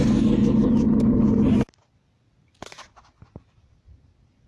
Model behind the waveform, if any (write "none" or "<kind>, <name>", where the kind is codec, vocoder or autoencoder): none